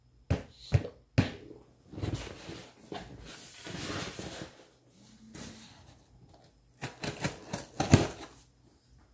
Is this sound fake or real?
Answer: real